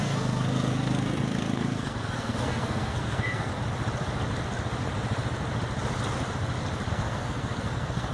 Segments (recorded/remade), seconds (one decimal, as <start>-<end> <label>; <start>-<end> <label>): 0.0-3.5 remade; 3.5-6.9 recorded; 6.9-8.1 remade